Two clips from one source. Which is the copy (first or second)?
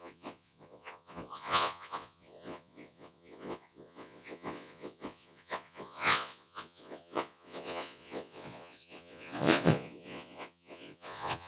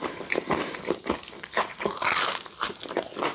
first